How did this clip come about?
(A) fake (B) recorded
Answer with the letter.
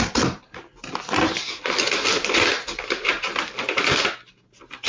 B